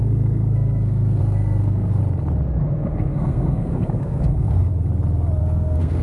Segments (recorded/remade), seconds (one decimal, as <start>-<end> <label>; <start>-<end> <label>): 0.0-2.0 remade; 2.0-2.6 recorded; 2.6-4.7 remade; 4.7-5.4 recorded; 5.4-6.0 remade